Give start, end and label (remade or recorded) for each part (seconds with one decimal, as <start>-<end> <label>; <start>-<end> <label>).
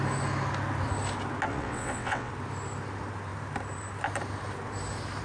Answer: 0.0-1.5 recorded; 1.5-2.3 remade; 2.3-5.2 recorded